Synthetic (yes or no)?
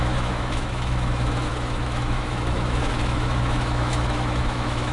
yes